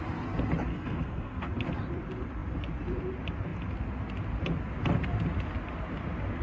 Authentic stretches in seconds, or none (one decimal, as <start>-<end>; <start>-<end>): 0.0-0.7; 1.4-6.4